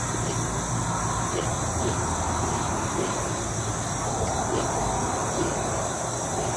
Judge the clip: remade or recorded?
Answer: recorded